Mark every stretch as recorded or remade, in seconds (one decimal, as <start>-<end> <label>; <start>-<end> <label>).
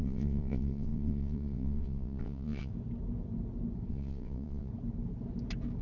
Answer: 0.0-2.7 remade; 2.7-3.9 recorded; 3.9-4.7 remade; 4.7-5.8 recorded